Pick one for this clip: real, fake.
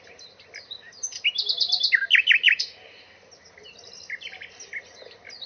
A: real